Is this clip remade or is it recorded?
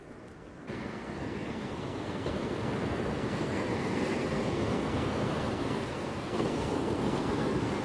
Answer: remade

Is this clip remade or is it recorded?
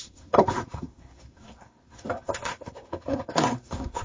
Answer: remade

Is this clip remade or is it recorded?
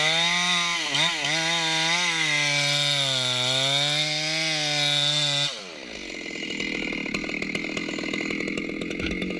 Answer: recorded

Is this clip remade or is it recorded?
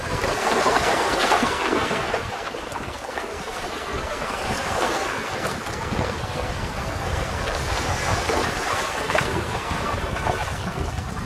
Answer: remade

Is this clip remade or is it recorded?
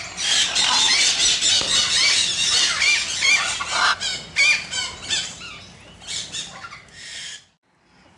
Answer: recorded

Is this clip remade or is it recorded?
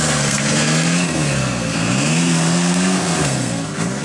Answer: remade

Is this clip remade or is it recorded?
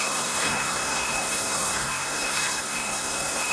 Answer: remade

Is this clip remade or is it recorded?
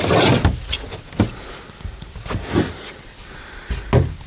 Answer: recorded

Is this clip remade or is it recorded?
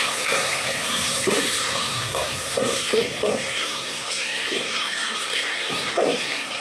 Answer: remade